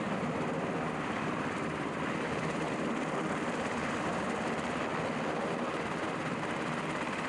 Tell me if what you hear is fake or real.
fake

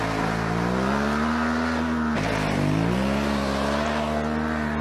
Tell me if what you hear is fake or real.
real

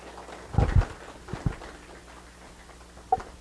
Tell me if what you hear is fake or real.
real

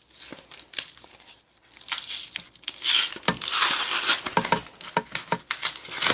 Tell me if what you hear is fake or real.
real